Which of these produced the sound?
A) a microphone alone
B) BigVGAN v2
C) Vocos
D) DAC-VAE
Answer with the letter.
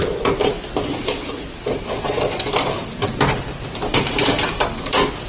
A